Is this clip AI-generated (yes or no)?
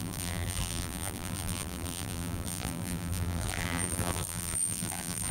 yes